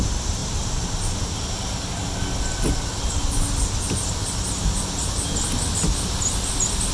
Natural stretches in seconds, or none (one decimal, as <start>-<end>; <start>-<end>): 0.0-6.9